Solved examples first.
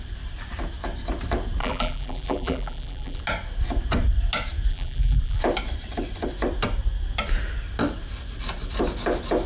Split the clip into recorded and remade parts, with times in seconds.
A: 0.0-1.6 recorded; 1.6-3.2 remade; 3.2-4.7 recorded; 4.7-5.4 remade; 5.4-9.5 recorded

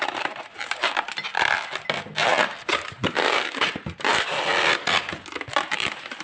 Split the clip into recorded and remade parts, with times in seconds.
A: 0.0-1.3 remade; 1.3-2.7 recorded; 2.7-4.5 remade; 4.5-5.6 recorded; 5.6-6.2 remade

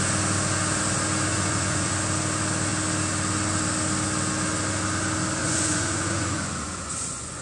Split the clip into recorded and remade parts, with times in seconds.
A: 0.0-1.3 recorded; 1.3-1.9 remade; 1.9-5.4 recorded; 5.4-7.4 remade

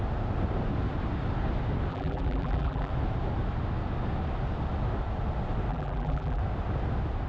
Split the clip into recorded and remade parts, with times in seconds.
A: 0.0-1.9 recorded; 1.9-2.9 remade; 2.9-5.7 recorded; 5.7-6.4 remade; 6.4-7.3 recorded

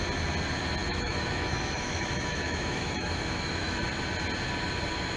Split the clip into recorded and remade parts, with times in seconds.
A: 0.0-0.8 recorded; 0.8-3.9 remade; 3.9-5.2 recorded